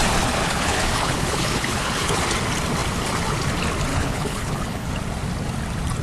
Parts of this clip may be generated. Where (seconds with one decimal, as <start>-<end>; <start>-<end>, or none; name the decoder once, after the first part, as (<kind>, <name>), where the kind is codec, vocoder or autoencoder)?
0.4-2.2 (codec, HILCodec); 3.9-4.9